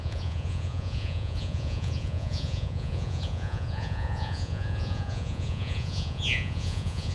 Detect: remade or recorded remade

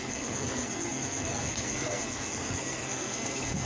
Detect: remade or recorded remade